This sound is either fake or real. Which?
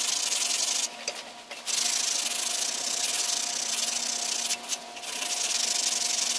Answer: real